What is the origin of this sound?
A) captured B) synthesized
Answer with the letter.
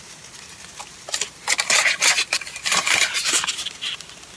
A